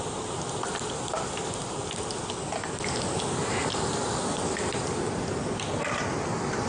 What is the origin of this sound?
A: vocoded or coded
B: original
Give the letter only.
B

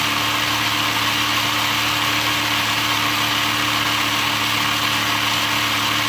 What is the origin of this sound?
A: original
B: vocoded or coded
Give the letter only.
A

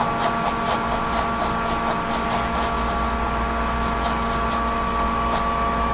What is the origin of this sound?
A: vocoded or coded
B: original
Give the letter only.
B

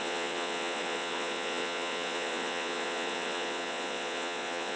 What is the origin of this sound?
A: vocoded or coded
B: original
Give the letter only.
A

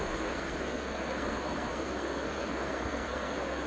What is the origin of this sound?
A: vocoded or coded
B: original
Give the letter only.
A